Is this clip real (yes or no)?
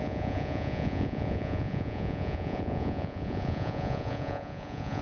no